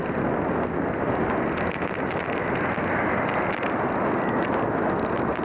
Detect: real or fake real